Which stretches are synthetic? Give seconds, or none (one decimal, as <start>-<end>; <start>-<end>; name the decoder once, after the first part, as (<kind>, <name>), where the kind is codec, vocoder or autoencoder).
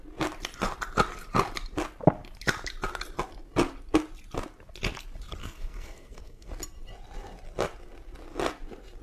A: 5.4-6.5 (codec, SNAC)